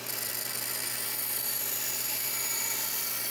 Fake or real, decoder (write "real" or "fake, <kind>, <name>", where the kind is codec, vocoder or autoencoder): fake, vocoder, BigVGAN v2